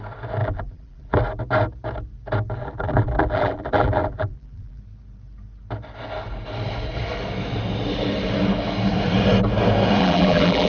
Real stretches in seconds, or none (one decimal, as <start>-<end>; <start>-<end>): 0.0-0.4; 1.2-2.6; 4.8-10.0